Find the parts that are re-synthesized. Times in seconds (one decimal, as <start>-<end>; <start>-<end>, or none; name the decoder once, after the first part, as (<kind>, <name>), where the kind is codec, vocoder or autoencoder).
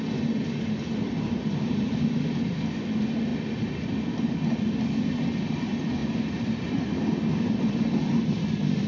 3.3-4.3 (vocoder, BigVGAN v2); 6.0-6.7